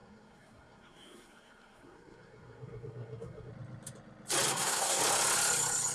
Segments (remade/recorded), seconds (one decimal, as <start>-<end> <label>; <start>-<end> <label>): 0.0-3.5 remade; 3.5-4.5 recorded; 4.5-5.0 remade; 5.0-5.9 recorded